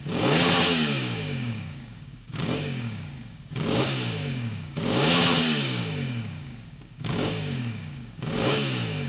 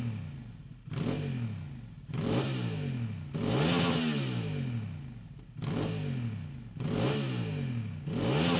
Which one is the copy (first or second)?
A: first